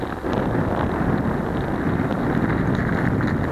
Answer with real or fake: real